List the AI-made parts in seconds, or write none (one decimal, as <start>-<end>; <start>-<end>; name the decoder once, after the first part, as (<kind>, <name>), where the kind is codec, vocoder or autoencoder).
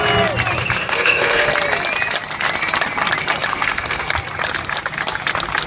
0.8-1.5 (codec, SNAC); 3.5-4.1